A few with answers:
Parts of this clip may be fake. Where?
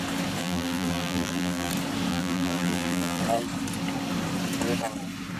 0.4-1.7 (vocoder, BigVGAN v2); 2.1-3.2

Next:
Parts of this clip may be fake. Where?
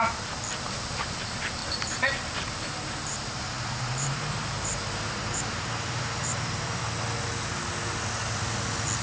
1.6-6.8 (vocoder, BigVGAN v2)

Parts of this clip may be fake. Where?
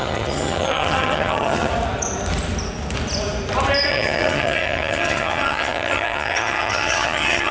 0.0-1.7 (vocoder, HiFi-GAN); 3.9-7.5